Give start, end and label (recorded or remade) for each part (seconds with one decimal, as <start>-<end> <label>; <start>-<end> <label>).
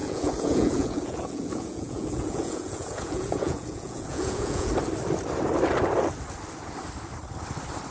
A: 0.0-4.7 remade; 4.7-7.9 recorded